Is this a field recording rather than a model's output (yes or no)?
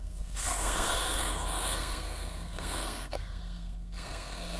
no